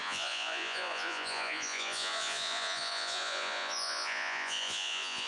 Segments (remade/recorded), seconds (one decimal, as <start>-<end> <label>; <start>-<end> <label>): 0.0-5.3 remade